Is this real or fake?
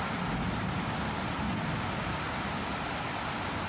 real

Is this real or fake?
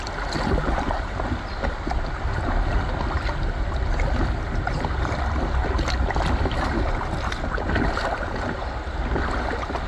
real